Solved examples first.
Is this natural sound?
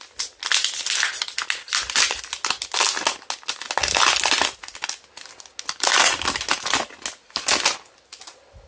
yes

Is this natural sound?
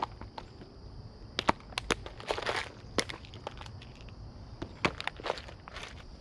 yes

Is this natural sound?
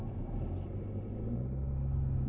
yes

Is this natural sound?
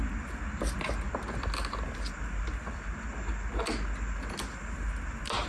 yes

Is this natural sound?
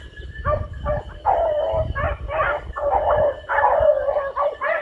yes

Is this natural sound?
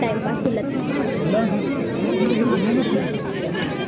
yes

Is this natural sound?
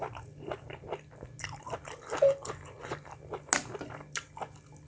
yes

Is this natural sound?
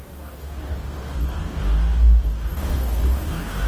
no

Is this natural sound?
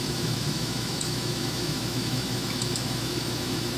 no